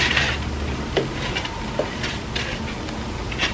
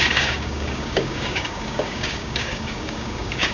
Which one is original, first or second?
first